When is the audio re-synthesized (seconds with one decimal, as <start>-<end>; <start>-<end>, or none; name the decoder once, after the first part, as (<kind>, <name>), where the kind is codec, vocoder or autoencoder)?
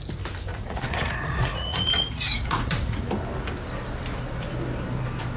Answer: 0.5-3.0 (vocoder, Vocos)